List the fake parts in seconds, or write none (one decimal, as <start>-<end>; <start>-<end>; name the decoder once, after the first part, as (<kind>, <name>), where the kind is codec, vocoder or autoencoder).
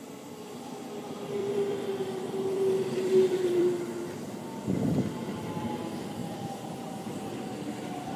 1.4-3.8 (vocoder, BigVGAN v2); 6.2-7.1